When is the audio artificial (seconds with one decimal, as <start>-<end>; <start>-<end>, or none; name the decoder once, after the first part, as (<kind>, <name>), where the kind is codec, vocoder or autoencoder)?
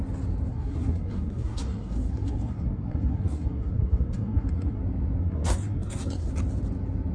0.5-4.8 (codec, SNAC); 5.2-6.3